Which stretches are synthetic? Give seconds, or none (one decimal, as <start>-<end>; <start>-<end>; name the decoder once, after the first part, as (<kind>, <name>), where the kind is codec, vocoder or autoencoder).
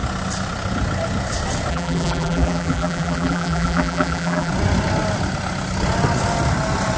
1.7-4.5 (vocoder, BigVGAN v2)